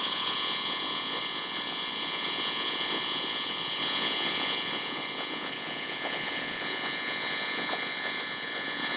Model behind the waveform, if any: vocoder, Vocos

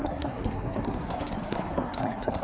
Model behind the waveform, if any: codec, SNAC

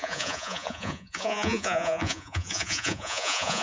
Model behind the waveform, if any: vocoder, Vocos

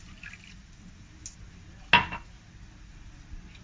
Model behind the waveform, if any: none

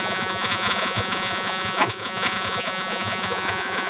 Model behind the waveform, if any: vocoder, Vocos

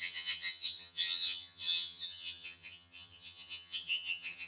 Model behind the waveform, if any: vocoder, HiFi-GAN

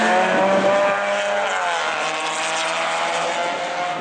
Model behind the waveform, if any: none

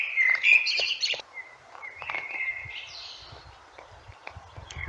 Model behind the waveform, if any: vocoder, BigVGAN v2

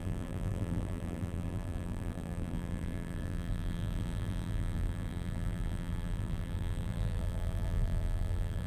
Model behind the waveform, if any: vocoder, BigVGAN v2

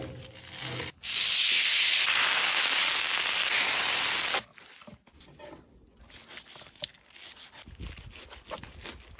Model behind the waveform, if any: none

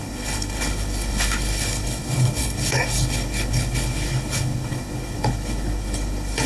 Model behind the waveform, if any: codec, HILCodec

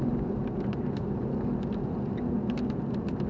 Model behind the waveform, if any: none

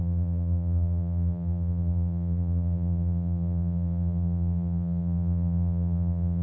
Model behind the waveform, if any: vocoder, BigVGAN v2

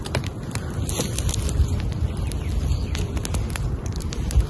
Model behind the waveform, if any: none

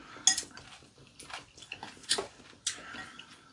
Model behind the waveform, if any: none